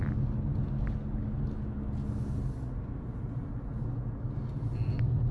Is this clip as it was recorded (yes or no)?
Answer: yes